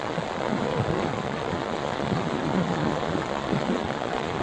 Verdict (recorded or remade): remade